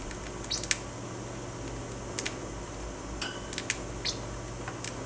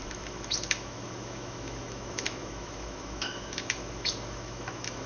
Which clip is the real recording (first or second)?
first